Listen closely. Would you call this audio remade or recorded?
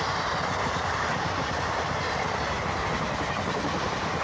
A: recorded